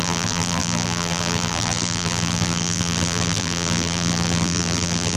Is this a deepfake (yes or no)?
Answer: yes